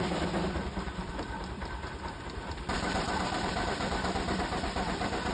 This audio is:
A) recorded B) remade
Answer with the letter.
B